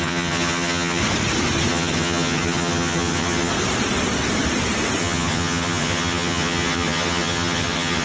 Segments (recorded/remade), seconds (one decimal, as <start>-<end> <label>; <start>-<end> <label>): 0.0-1.0 remade; 1.0-1.7 recorded; 1.7-3.5 remade; 3.5-5.0 recorded; 5.0-8.0 remade